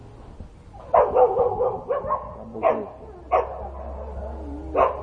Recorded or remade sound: recorded